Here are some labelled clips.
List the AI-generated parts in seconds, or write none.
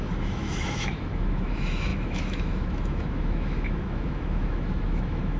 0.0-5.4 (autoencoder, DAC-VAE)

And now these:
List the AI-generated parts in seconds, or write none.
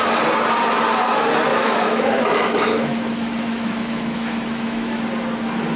1.5-5.0 (autoencoder, DAC-VAE)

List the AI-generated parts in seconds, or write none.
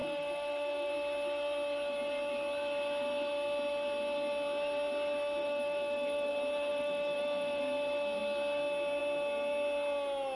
0.0-0.9 (autoencoder, DAC-VAE); 5.4-6.3; 6.7-7.6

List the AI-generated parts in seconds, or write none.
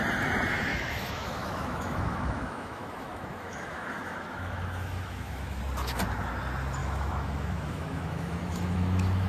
0.7-5.6 (autoencoder, DAC-VAE); 6.8-9.3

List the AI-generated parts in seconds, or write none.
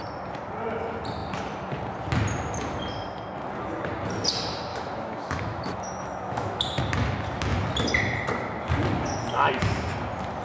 4.7-6.8 (autoencoder, DAC-VAE)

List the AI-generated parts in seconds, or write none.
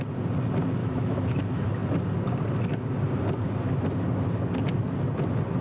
0.8-1.4 (autoencoder, DAC-VAE)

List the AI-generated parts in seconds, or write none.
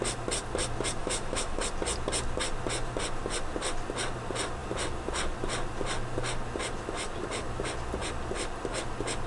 1.0-1.6 (autoencoder, DAC-VAE)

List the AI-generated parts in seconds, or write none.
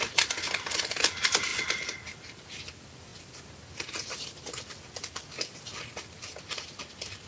none